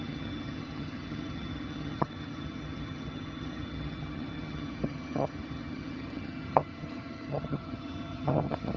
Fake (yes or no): yes